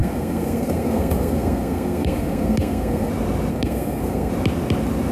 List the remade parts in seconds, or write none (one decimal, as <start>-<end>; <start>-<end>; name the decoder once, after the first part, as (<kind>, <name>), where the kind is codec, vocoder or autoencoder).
0.0-3.1 (codec, SNAC); 3.5-4.3